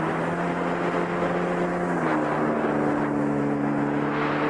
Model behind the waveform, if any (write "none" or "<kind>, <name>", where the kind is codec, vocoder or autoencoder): none